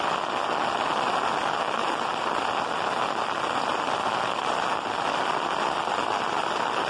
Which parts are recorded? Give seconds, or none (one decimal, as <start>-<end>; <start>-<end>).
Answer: 0.0-6.9